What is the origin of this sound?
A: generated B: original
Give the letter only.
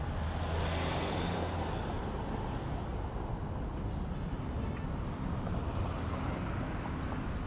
B